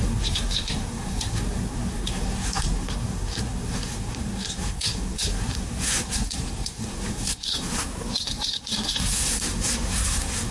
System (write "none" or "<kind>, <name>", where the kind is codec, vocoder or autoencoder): codec, SNAC